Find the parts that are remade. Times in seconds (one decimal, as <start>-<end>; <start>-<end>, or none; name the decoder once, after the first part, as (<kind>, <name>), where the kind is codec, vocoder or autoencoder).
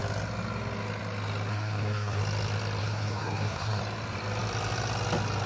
1.5-2.2 (codec, SNAC); 2.8-3.8